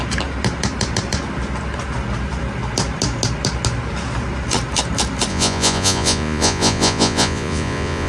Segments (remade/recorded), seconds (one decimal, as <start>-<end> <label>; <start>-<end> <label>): 0.0-5.3 recorded; 5.3-8.1 remade

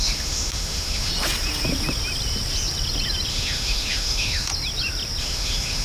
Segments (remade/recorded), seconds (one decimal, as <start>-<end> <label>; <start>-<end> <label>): 0.0-1.1 remade; 1.1-3.3 recorded; 3.3-4.5 remade; 4.5-5.2 recorded; 5.2-5.8 remade

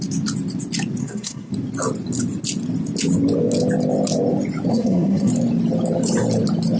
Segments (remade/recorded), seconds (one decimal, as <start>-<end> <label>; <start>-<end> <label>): 0.0-1.0 recorded; 1.0-1.5 remade; 1.5-4.7 recorded; 4.7-5.3 remade; 5.3-6.8 recorded

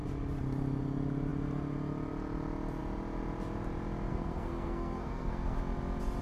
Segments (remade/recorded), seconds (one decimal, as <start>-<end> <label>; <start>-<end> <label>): 0.0-4.1 recorded; 4.1-5.6 remade; 5.6-6.2 recorded

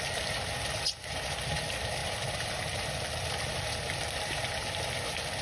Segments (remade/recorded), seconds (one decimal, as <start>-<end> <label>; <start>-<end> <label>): 0.0-5.4 recorded